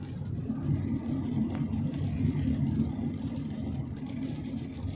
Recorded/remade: recorded